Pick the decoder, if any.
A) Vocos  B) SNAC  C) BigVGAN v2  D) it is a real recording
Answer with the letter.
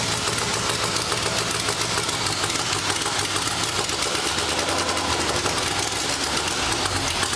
D